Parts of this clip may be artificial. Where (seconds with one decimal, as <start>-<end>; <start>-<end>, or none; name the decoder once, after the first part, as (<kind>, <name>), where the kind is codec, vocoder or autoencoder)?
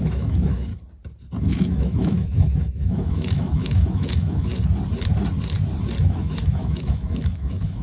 0.0-0.7 (autoencoder, DAC-VAE); 1.4-4.5; 6.0-7.8